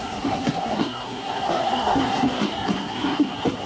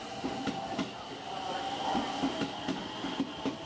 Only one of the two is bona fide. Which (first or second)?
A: second